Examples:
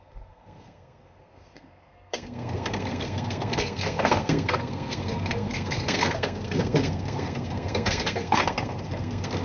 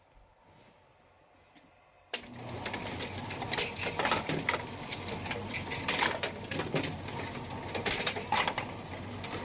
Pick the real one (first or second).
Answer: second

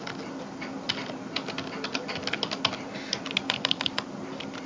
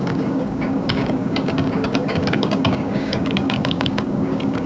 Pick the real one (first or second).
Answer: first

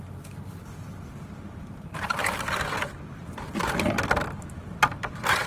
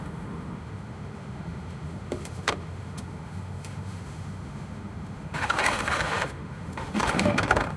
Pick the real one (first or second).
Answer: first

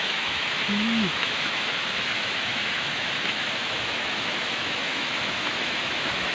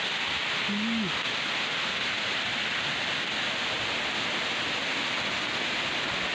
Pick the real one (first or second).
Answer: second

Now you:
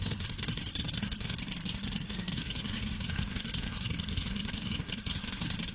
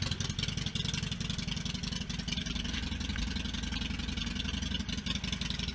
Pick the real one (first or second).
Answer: second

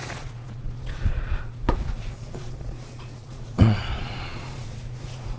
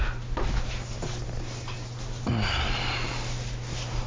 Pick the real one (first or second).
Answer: second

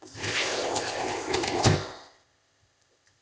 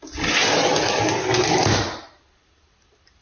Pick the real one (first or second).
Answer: second